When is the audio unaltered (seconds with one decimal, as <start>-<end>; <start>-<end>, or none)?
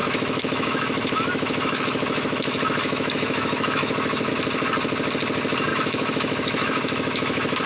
4.3-5.7